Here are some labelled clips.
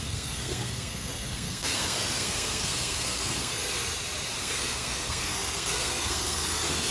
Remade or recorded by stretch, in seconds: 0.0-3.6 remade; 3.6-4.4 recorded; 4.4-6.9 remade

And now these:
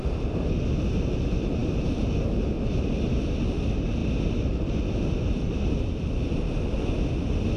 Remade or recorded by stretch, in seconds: 0.0-7.6 recorded

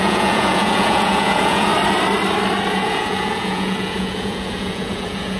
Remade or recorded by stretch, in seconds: 0.0-1.7 remade; 1.7-2.7 recorded; 2.7-5.4 remade